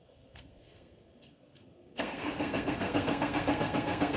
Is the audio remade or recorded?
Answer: remade